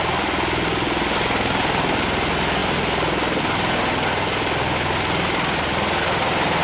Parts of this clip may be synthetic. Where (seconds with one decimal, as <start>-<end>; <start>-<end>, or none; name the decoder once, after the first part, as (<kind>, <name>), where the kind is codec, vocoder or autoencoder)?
none